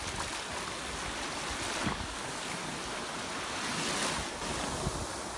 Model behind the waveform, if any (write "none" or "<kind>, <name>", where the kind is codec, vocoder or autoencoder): none